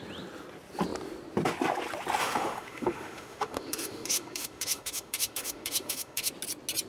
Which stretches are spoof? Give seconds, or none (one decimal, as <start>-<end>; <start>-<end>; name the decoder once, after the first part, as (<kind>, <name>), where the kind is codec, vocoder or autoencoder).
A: 2.2-6.3 (autoencoder, DAC-VAE)